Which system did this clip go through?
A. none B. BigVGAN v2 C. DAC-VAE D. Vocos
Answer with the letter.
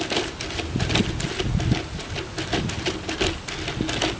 A